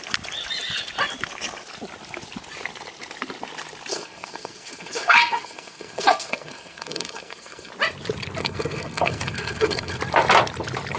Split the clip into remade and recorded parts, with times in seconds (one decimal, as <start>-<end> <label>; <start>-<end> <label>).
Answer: 0.0-3.9 recorded; 3.9-7.7 remade; 7.7-8.4 recorded; 8.4-10.0 remade; 10.0-11.0 recorded